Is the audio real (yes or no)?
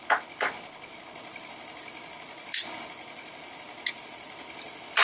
no